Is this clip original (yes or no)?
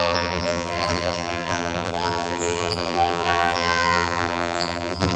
no